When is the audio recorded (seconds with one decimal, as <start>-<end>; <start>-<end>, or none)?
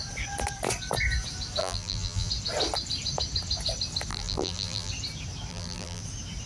0.0-1.6; 2.3-4.1; 4.9-5.5; 6.0-6.5